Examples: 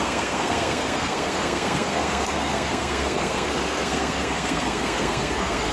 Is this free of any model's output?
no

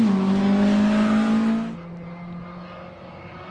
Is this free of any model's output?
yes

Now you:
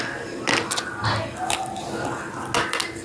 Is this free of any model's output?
yes